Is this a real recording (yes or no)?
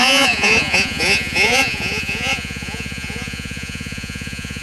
no